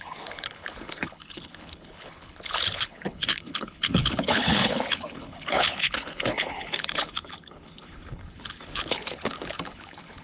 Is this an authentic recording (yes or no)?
no